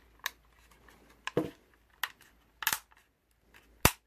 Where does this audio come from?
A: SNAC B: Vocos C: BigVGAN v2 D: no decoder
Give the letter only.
D